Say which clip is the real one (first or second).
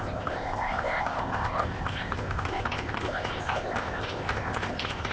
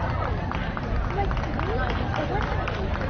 second